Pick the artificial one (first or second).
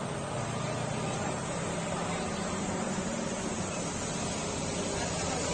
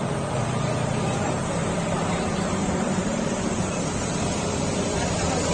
second